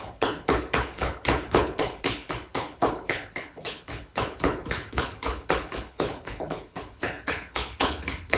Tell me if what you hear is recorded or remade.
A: remade